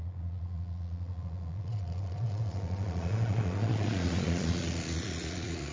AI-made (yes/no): yes